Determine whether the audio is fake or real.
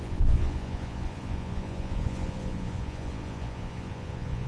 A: fake